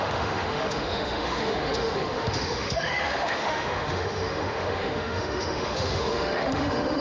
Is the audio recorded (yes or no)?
no